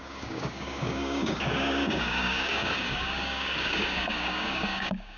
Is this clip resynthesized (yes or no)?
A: yes